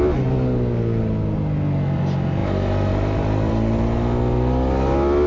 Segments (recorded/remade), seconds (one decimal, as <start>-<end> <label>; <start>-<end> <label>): 0.0-5.3 recorded